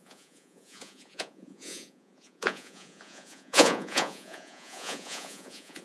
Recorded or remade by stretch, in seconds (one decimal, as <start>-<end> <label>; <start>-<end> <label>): 0.0-5.8 remade